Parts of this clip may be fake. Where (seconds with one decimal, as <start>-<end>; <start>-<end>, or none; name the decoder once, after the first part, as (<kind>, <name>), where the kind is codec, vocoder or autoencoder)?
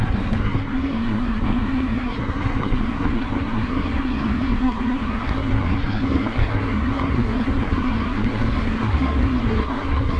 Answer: 0.0-10.2 (codec, SNAC)